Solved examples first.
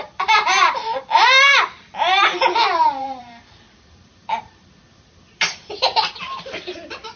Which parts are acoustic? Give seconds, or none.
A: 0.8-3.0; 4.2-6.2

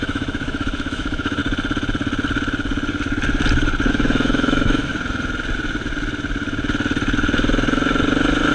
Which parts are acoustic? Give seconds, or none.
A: 1.4-3.9; 4.9-8.5

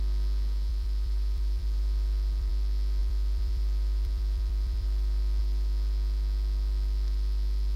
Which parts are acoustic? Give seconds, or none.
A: 0.0-0.7; 2.5-3.0; 5.4-7.8

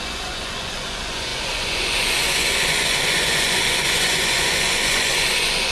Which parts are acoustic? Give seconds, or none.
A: none